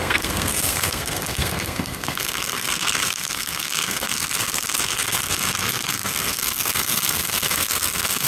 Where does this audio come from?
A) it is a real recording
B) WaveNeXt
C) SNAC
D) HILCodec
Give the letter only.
C